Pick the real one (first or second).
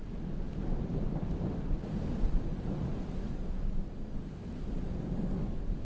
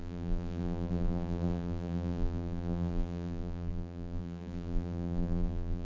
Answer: first